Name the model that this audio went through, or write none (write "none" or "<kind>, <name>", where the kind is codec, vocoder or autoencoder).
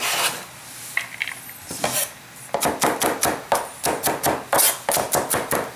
none